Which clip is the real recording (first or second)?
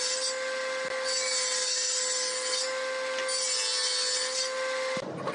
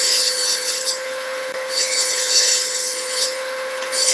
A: first